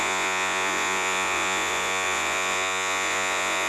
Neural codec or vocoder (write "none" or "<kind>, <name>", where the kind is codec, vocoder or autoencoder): vocoder, Vocos